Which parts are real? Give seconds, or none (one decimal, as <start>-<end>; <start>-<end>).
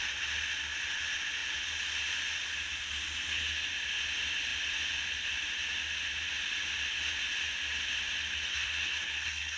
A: 0.0-8.5